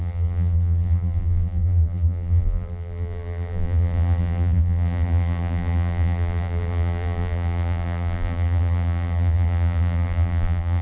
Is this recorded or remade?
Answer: remade